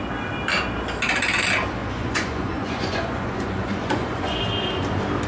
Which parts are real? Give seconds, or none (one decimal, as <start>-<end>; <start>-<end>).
0.0-1.8; 4.4-5.3